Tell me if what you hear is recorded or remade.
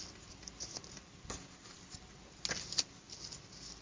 recorded